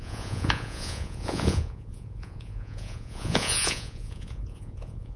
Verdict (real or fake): fake